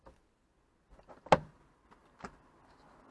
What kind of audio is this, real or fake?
real